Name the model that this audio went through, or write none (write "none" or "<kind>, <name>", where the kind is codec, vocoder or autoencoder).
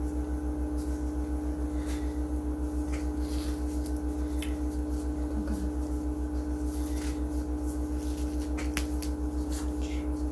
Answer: none